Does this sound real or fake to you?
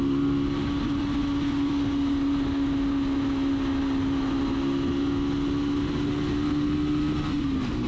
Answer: real